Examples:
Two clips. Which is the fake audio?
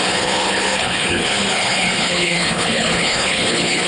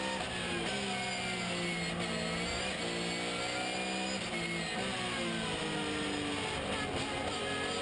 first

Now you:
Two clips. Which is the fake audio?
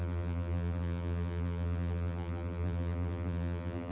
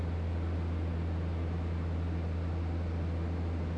first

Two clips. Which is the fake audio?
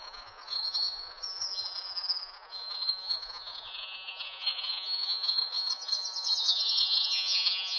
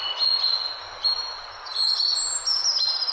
first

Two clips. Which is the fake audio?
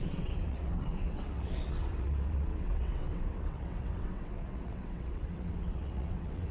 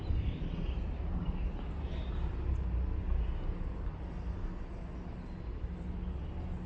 first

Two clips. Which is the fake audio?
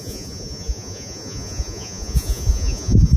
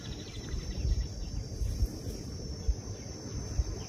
first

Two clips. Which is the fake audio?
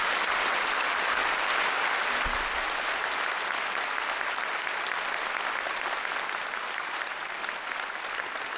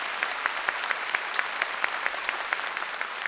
second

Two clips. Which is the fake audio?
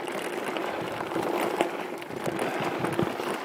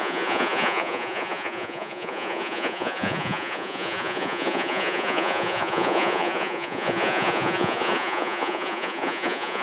second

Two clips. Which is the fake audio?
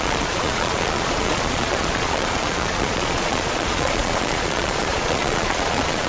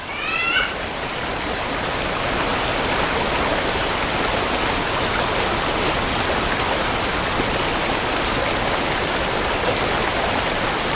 first